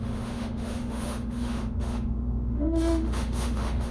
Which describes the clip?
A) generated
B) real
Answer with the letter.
A